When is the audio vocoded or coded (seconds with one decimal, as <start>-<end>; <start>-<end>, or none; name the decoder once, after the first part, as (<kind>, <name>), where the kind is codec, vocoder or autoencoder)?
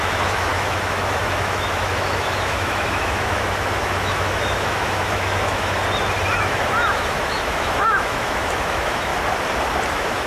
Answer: 0.0-5.8 (autoencoder, DAC-VAE); 6.4-9.1; 9.9-10.3